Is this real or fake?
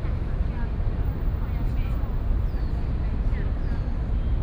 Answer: real